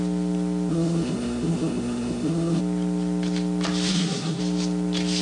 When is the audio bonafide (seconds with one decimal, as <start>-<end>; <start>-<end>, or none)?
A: 0.0-0.7; 2.6-3.9; 4.4-5.2